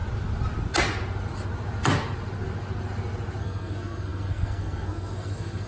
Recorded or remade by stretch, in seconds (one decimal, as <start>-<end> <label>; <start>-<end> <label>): 0.0-3.4 recorded; 3.4-5.7 remade